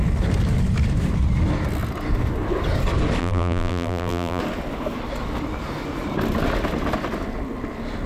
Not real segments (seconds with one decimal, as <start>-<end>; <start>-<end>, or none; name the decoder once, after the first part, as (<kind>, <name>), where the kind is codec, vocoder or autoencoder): 3.2-4.4 (vocoder, BigVGAN v2)